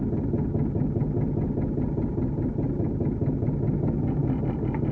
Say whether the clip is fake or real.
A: real